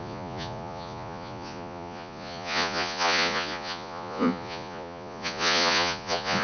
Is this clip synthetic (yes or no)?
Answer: yes